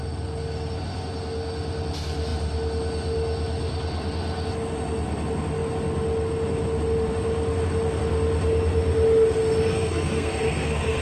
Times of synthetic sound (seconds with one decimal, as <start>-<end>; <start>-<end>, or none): 9.7-11.0